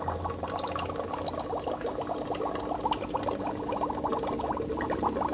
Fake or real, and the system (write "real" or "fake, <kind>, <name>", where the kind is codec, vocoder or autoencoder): real